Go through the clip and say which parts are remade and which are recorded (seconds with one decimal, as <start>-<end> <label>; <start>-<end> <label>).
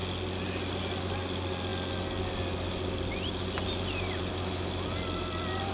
0.0-5.7 recorded